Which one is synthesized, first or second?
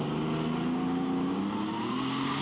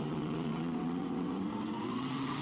second